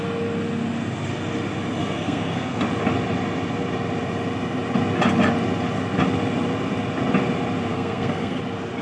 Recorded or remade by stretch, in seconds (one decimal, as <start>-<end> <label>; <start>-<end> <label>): 0.0-1.8 recorded; 1.8-2.6 remade; 2.6-7.7 recorded; 7.7-8.4 remade; 8.4-8.8 recorded